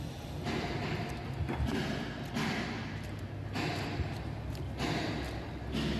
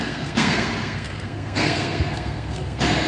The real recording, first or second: first